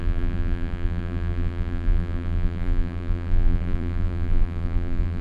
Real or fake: fake